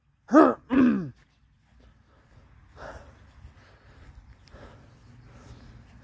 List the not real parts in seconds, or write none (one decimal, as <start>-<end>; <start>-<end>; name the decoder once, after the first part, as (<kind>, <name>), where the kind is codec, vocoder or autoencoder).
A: none